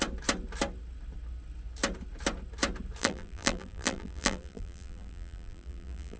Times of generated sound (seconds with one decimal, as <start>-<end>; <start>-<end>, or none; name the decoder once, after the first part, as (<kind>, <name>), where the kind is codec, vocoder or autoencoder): 3.0-6.2 (vocoder, BigVGAN v2)